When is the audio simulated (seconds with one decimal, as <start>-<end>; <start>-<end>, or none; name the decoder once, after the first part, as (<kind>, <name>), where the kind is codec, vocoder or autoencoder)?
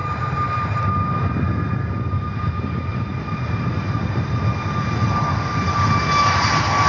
0.0-0.9 (vocoder, BigVGAN v2)